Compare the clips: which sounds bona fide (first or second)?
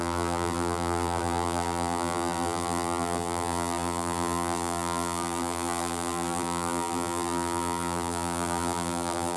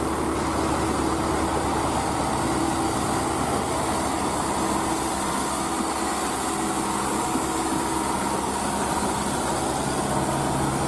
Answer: second